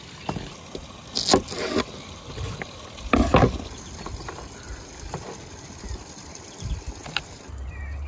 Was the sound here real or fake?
real